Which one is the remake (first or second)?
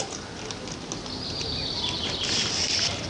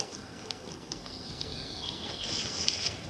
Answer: second